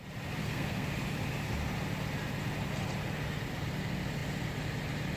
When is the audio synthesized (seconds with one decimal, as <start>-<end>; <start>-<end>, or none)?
0.4-0.9